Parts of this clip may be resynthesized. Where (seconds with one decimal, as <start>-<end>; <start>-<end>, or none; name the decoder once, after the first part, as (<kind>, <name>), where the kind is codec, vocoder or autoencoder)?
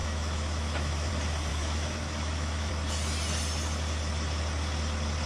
0.0-1.1 (autoencoder, DAC-VAE); 1.5-2.7